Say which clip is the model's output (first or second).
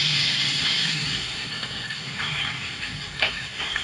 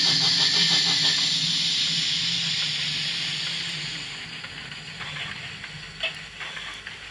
first